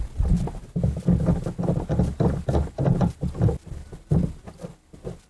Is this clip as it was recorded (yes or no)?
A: yes